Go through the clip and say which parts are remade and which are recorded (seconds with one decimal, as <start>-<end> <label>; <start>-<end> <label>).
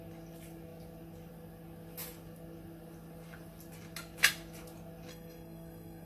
0.0-5.1 recorded; 5.1-6.1 remade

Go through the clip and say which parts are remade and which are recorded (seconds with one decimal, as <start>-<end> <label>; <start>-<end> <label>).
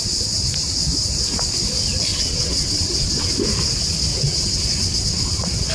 0.0-2.1 recorded; 2.1-3.3 remade; 3.3-4.1 recorded; 4.1-5.7 remade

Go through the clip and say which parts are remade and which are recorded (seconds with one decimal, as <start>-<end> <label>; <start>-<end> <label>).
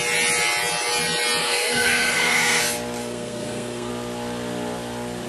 0.0-1.4 recorded; 1.4-2.6 remade; 2.6-3.0 recorded; 3.0-3.9 remade; 3.9-5.3 recorded